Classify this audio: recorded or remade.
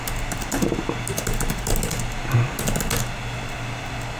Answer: recorded